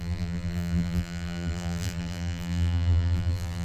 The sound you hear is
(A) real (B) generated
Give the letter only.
B